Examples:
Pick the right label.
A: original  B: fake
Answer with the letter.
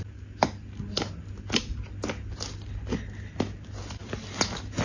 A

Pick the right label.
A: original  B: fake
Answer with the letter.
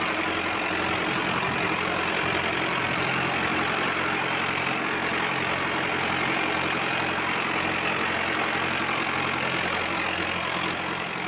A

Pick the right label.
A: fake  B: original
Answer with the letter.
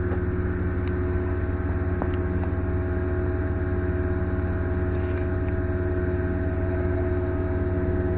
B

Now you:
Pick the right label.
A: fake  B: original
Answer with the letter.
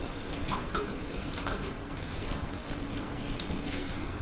A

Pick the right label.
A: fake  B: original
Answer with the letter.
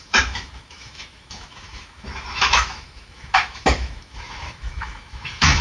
A